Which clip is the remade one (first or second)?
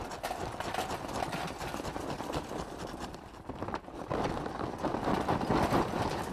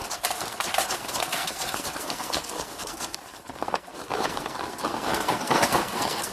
second